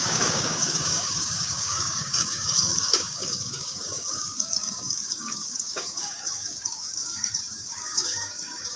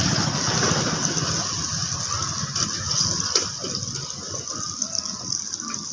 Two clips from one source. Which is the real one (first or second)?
second